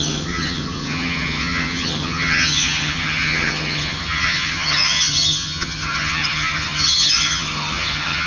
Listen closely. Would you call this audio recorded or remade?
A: remade